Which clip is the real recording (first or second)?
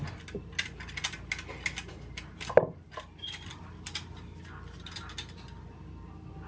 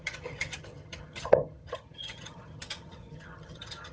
first